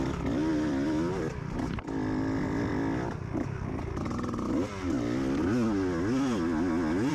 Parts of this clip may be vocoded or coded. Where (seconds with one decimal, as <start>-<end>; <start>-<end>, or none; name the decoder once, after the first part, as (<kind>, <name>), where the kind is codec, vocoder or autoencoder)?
0.0-2.7 (vocoder, BigVGAN v2)